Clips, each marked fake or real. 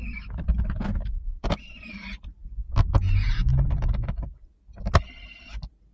real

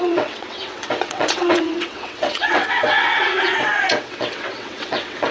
fake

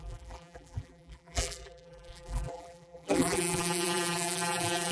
fake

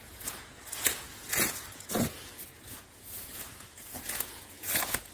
fake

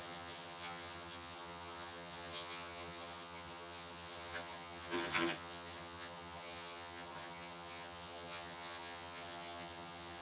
fake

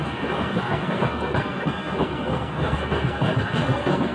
fake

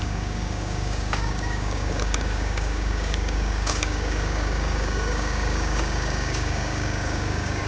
fake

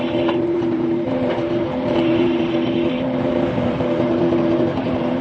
fake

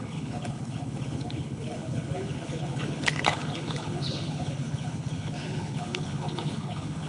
fake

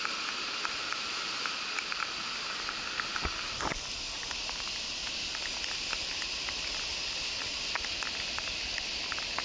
real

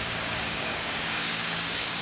fake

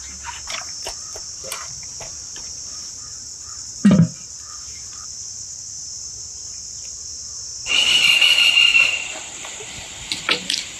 fake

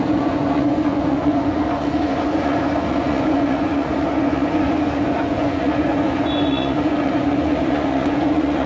fake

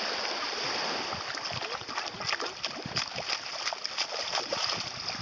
real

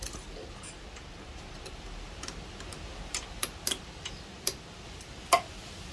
real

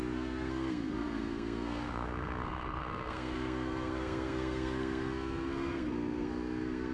fake